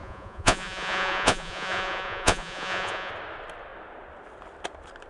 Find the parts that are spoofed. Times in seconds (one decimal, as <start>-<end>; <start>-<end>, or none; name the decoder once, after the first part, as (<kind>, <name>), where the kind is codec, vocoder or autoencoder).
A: 0.0-3.1 (vocoder, Vocos)